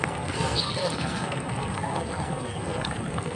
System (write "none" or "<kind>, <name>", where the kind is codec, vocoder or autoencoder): codec, SNAC